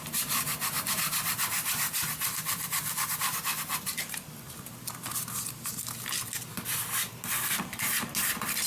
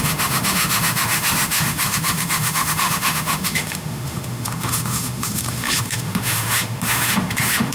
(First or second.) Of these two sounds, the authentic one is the first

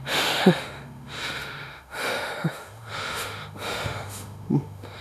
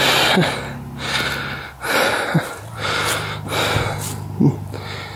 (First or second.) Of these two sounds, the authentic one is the second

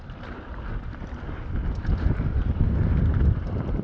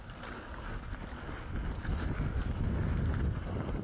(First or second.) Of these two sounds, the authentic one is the second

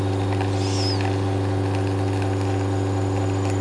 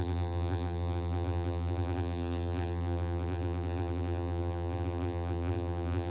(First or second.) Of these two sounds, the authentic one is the first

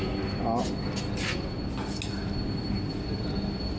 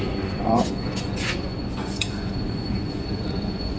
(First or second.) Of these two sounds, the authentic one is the first